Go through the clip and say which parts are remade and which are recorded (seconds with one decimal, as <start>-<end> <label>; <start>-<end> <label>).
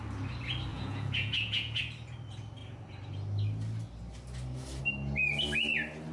0.0-0.7 recorded; 0.7-1.8 remade; 1.8-6.1 recorded